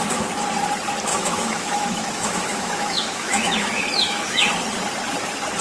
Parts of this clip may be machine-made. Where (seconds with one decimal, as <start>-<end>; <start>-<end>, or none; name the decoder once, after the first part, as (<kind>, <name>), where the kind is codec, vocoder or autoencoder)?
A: 1.1-4.5 (autoencoder, DAC-VAE)